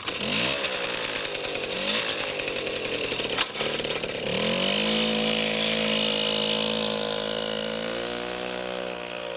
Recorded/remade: recorded